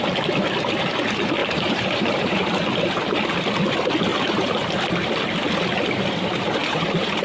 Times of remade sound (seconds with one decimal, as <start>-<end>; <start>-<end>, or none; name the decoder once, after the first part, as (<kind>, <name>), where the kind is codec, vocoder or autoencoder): 1.4-2.6 (vocoder, BigVGAN v2); 4.1-4.7; 6.6-7.2

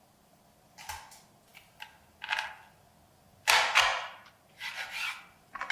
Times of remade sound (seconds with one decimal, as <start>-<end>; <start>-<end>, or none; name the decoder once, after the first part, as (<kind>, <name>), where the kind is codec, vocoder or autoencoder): 3.9-4.5 (vocoder, BigVGAN v2)

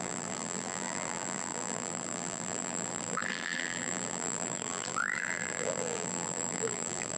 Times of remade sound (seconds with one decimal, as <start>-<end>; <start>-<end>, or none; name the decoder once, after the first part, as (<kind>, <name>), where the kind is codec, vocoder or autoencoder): 0.0-7.2 (vocoder, BigVGAN v2)

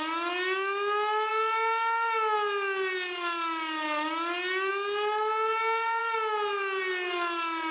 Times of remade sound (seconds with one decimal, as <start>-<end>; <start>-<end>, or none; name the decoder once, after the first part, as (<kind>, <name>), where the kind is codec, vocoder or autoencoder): none

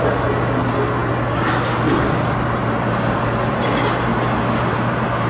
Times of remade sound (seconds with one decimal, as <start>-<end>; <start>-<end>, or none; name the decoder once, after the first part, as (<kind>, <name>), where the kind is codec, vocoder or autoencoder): 2.6-3.6 (vocoder, BigVGAN v2); 4.1-5.3